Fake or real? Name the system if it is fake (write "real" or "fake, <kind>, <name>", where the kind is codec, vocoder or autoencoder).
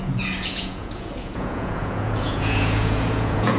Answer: fake, vocoder, Vocos